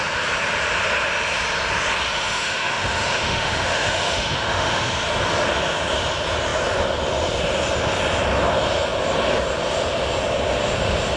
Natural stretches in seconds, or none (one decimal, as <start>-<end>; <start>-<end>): 0.0-2.1; 4.9-11.2